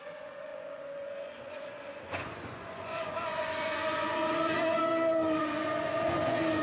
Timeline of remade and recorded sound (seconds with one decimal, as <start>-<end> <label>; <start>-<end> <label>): 0.0-4.9 remade; 4.9-5.4 recorded; 5.4-6.6 remade